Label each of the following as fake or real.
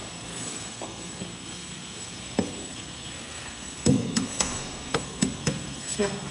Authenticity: fake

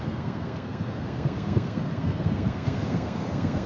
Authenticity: fake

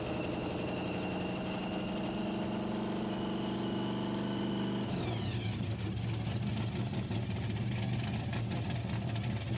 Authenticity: real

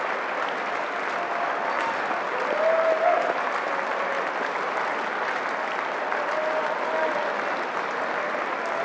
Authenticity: real